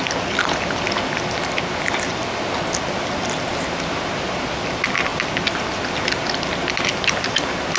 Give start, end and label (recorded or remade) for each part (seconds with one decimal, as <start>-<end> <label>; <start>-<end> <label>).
0.0-7.8 recorded